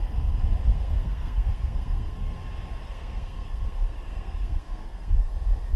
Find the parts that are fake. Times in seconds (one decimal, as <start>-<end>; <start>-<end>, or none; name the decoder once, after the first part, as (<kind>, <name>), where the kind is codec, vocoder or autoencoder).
0.7-2.4 (codec, SNAC); 2.8-5.3